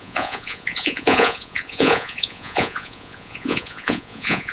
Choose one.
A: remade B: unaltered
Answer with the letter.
A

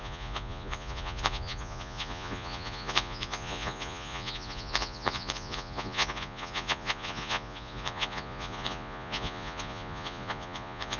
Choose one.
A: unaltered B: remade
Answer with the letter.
B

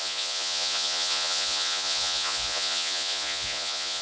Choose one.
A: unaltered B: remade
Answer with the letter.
B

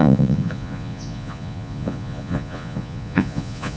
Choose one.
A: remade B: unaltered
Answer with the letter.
A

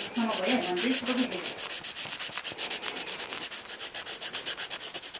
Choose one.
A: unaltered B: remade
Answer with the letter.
A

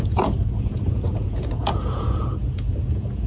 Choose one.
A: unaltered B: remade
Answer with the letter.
B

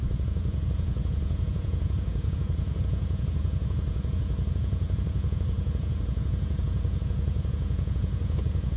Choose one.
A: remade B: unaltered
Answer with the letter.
A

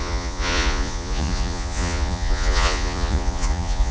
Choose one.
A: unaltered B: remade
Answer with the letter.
B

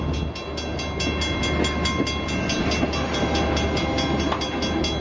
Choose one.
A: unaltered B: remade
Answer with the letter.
A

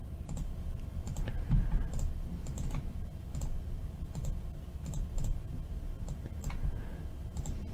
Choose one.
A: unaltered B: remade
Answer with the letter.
A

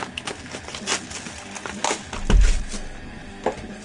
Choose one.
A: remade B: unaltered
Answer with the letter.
B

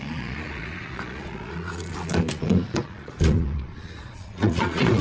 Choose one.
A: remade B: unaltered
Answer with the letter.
A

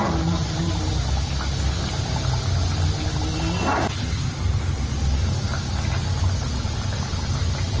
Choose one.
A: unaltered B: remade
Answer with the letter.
A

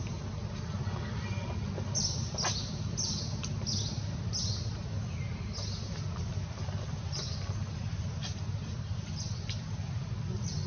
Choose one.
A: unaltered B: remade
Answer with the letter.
A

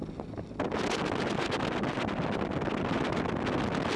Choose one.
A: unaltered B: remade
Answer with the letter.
A